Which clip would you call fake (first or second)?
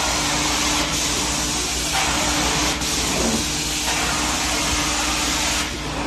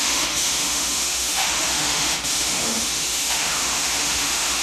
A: second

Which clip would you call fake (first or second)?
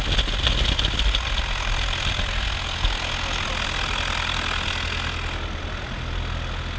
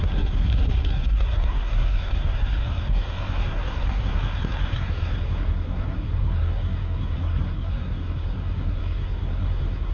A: second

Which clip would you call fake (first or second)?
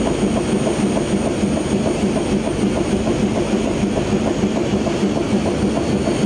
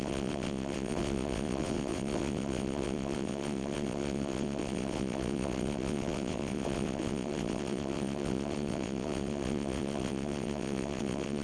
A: second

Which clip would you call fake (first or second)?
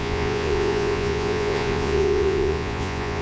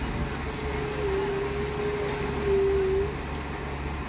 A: first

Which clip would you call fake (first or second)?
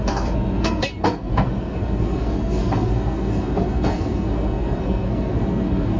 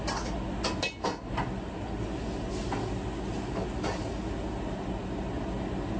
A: first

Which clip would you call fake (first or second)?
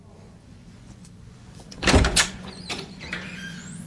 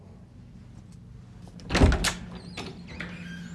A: first